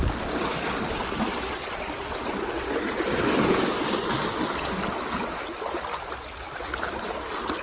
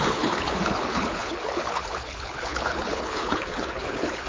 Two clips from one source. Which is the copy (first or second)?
second